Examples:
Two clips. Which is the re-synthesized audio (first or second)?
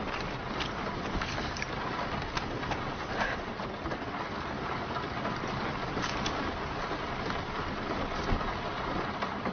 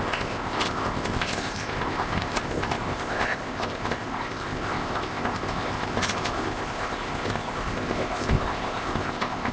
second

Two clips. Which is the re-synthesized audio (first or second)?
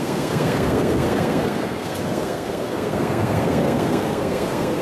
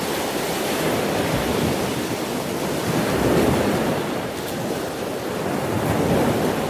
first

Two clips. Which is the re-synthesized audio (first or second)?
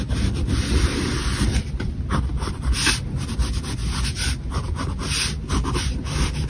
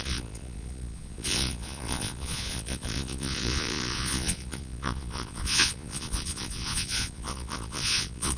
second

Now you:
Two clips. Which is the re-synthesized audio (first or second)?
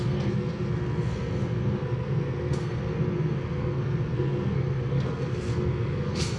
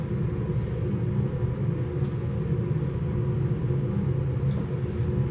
first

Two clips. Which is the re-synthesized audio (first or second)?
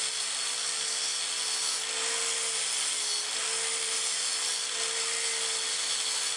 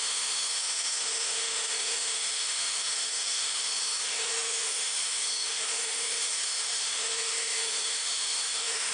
second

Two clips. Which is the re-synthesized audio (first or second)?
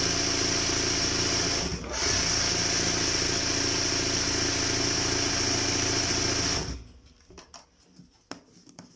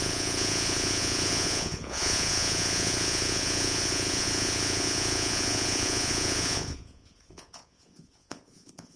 second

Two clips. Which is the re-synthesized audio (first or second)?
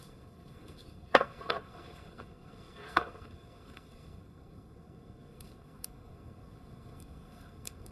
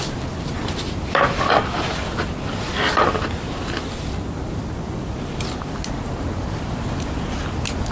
first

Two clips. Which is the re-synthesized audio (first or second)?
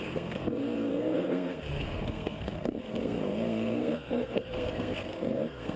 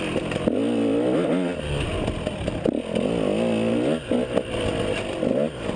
first